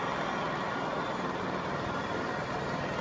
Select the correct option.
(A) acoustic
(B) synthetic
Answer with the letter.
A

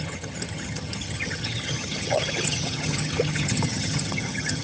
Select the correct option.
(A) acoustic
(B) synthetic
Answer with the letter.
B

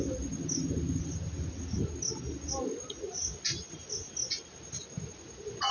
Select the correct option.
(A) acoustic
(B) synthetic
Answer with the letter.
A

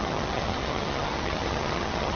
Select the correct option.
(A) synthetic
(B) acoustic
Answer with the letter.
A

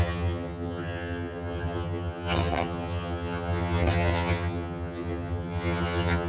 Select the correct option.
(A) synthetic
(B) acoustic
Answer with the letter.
A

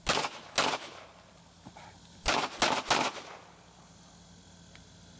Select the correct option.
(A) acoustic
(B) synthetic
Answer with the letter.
A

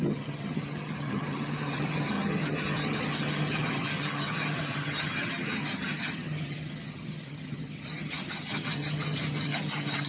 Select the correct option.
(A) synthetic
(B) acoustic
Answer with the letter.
A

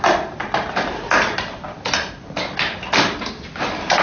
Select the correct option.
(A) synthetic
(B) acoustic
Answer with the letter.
B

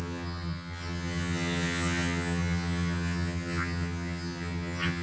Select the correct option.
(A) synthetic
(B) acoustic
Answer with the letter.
A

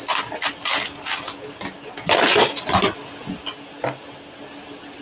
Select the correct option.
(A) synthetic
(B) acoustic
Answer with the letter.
B